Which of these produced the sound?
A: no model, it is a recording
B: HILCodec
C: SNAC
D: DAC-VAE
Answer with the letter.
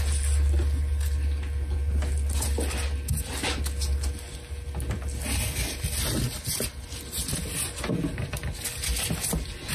A